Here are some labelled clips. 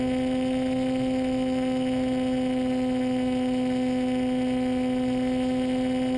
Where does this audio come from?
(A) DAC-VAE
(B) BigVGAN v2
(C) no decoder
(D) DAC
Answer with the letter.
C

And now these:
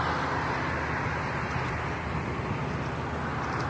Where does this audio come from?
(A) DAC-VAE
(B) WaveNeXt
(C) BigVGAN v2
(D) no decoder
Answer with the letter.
D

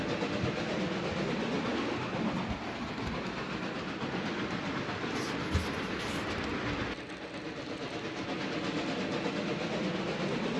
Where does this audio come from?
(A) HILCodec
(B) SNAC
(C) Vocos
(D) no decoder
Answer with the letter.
D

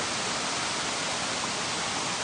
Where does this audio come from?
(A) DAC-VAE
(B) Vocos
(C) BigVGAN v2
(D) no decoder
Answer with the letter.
D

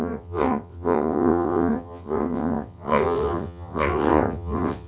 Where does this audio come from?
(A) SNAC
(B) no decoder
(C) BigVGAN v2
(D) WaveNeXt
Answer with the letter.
D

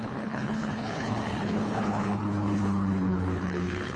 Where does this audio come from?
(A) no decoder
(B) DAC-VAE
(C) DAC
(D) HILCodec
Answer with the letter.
D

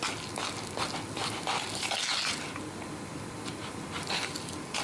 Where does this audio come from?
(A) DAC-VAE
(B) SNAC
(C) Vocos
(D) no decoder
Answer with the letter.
D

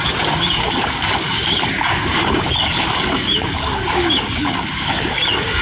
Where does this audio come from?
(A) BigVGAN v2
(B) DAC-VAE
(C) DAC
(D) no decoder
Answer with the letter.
C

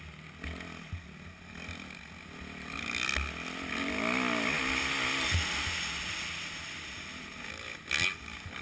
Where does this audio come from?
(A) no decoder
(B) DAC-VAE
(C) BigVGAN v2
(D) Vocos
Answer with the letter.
A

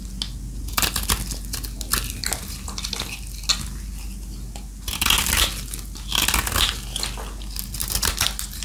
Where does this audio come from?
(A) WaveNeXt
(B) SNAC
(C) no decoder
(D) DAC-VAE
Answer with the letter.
C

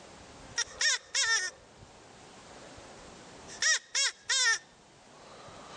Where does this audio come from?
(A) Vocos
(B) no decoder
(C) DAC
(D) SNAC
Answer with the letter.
B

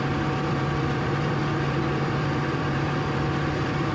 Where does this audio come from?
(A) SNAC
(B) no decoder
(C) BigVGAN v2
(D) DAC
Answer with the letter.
C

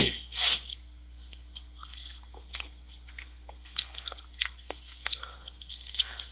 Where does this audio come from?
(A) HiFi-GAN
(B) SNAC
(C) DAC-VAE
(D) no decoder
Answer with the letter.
B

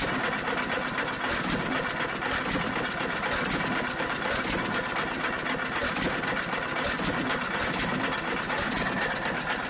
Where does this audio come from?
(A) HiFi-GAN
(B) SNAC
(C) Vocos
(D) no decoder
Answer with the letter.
D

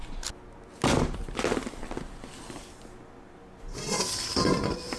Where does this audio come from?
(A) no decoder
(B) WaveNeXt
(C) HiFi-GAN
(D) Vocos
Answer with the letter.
A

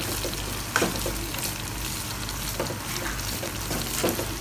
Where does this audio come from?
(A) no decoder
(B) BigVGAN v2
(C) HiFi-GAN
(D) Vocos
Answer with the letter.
A